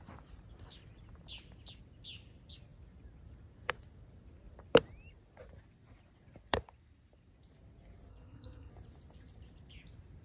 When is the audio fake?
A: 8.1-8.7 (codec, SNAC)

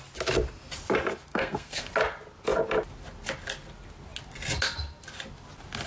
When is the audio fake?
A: 1.3-1.9 (codec, SNAC)

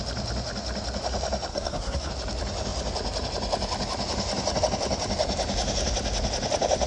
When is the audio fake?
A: 1.5-2.1 (codec, SNAC)

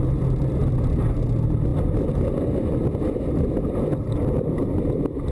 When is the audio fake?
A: none

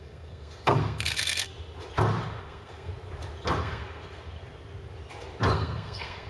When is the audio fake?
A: 0.0-1.5 (codec, SNAC); 2.4-2.9; 3.6-4.4; 5.5-6.3

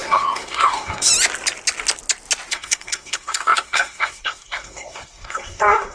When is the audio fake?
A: 0.0-1.1 (codec, SNAC); 2.5-5.9

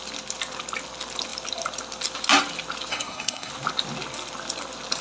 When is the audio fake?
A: 2.9-3.5 (codec, SNAC)